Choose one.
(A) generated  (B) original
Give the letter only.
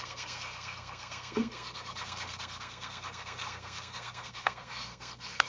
A